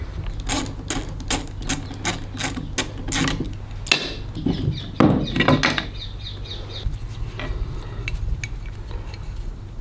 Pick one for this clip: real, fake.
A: real